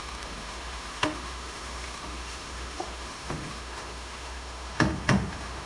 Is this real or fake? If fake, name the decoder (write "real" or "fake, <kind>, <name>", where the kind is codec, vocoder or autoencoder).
fake, autoencoder, DAC-VAE